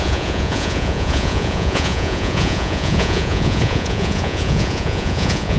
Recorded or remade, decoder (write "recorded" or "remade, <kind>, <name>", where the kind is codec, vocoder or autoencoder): remade, vocoder, Vocos